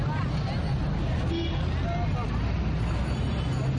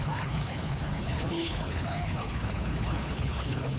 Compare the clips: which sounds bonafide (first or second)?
first